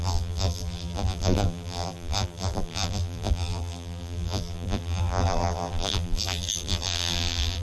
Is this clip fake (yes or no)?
yes